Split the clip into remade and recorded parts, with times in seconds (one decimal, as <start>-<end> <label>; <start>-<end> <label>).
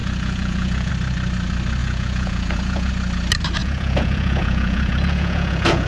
0.0-0.9 remade; 0.9-1.8 recorded; 1.8-2.9 remade; 2.9-3.6 recorded; 3.6-5.9 remade